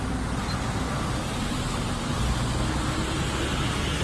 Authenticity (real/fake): real